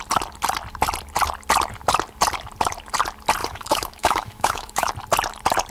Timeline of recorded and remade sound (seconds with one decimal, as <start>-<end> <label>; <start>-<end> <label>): 0.0-3.4 recorded; 3.4-4.9 remade; 4.9-5.7 recorded